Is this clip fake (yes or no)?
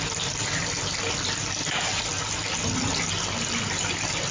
no